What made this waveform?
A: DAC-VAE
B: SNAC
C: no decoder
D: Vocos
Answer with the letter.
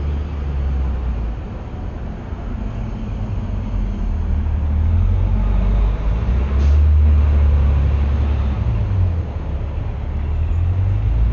C